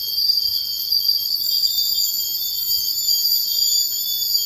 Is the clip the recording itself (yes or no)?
yes